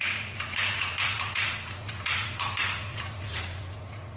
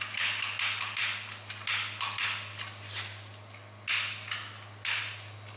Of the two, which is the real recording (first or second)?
second